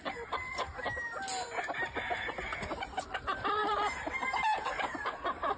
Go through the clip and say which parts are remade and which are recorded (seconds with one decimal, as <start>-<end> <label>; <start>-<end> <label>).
0.0-3.6 recorded; 3.6-5.6 remade